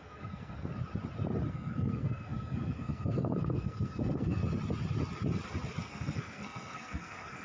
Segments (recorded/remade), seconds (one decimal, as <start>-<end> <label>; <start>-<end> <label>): 0.0-0.7 remade; 0.7-1.5 recorded; 1.5-4.4 remade; 4.4-5.8 recorded; 5.8-7.4 remade